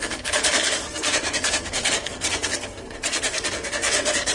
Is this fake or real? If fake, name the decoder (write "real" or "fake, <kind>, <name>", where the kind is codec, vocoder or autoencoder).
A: fake, codec, SNAC